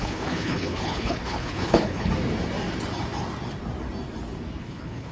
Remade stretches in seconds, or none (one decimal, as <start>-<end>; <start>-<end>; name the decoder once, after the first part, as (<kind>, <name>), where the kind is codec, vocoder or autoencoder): 0.0-2.1 (codec, HILCodec); 4.6-5.1